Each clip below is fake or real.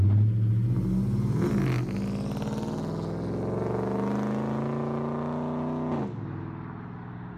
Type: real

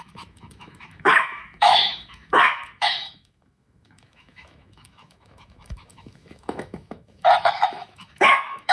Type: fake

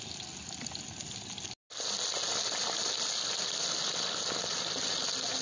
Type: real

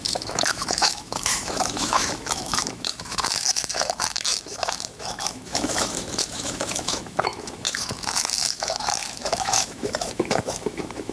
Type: fake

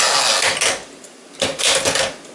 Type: real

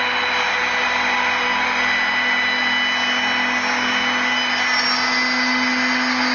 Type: real